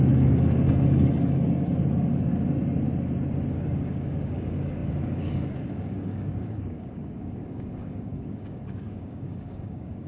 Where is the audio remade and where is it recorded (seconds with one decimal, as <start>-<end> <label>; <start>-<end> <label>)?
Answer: 0.0-2.3 remade; 2.3-3.5 recorded; 3.5-10.1 remade